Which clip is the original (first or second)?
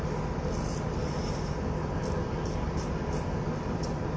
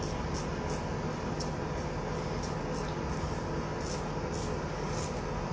second